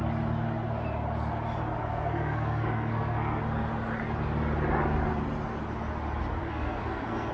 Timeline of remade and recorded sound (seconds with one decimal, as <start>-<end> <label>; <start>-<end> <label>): 0.0-1.8 recorded; 1.8-3.4 remade; 3.4-6.4 recorded; 6.4-7.3 remade